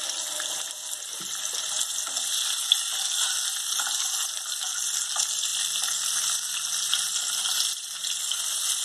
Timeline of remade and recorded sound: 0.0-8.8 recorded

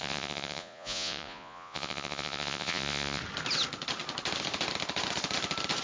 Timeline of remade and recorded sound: 0.0-3.2 remade; 3.2-5.8 recorded

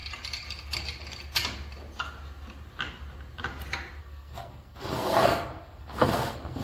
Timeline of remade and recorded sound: 0.0-4.0 recorded; 4.0-6.6 remade

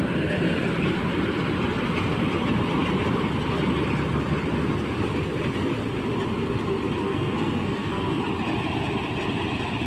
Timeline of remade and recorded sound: 0.0-7.0 recorded; 7.0-8.2 remade; 8.2-9.9 recorded